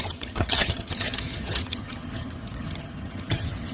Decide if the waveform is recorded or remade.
remade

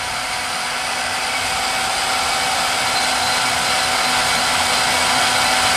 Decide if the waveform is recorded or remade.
recorded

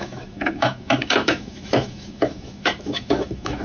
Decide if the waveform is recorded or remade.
remade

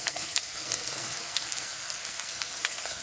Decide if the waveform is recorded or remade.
remade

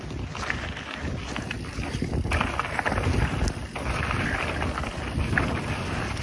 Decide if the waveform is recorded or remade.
recorded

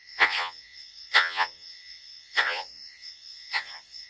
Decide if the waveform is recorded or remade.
remade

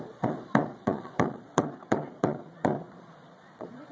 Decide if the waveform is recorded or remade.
remade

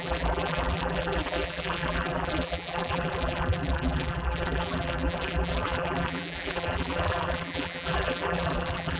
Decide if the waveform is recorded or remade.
remade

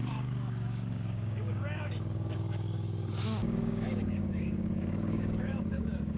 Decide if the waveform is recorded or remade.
remade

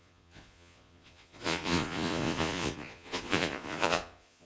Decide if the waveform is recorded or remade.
remade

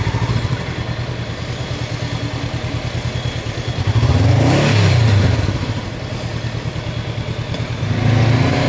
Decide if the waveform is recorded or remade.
recorded